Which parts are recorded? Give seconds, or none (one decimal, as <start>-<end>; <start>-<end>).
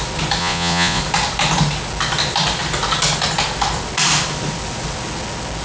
0.0-0.4; 1.0-5.6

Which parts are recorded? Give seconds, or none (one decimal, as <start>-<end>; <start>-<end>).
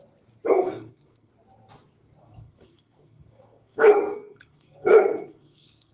0.0-0.5; 1.3-2.2